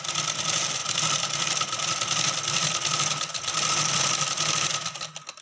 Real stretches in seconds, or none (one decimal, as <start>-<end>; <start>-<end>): 0.0-5.4